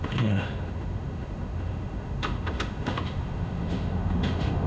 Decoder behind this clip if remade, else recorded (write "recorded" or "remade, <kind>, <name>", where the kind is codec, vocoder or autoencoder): remade, autoencoder, DAC-VAE